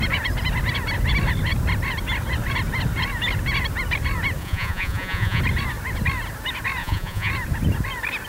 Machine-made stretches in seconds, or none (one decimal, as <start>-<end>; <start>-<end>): 4.4-5.4; 6.8-7.3